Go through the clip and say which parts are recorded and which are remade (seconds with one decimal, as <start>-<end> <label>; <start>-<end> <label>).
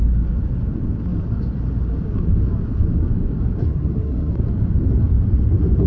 0.0-3.6 recorded; 3.6-4.3 remade; 4.3-5.9 recorded